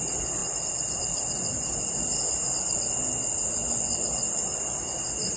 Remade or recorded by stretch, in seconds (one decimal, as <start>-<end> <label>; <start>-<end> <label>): 0.0-0.4 recorded; 0.4-1.0 remade; 1.0-1.5 recorded; 1.5-4.7 remade; 4.7-5.4 recorded